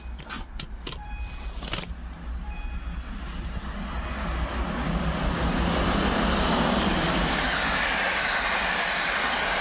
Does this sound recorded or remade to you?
recorded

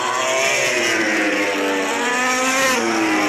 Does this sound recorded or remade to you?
recorded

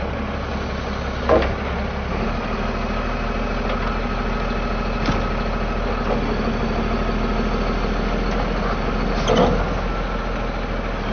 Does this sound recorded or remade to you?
recorded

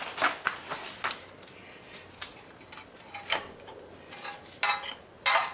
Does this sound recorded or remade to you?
recorded